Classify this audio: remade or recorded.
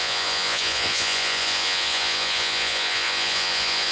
remade